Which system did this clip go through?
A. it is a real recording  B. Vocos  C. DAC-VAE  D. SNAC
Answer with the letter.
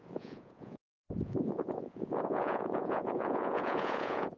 B